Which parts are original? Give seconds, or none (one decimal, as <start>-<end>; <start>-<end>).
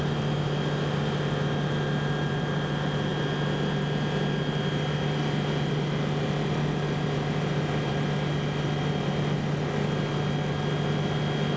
0.0-11.6